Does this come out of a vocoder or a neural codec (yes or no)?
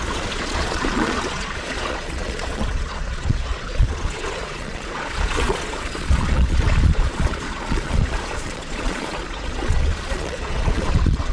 yes